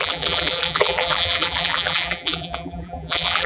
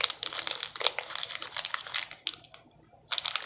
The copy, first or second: first